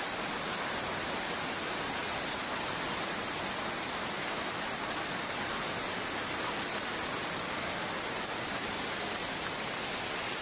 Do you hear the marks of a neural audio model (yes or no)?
no